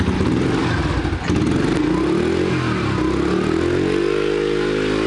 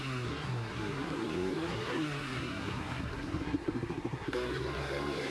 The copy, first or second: second